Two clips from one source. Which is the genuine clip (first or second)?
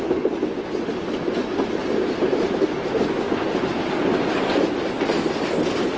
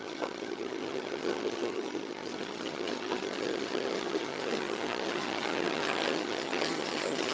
first